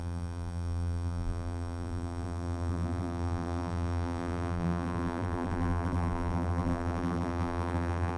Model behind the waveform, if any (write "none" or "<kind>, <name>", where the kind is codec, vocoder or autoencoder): vocoder, BigVGAN v2